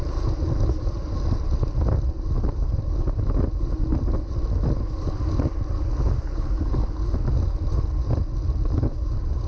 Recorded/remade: recorded